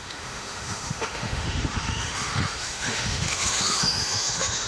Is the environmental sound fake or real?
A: fake